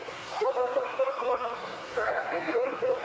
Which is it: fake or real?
fake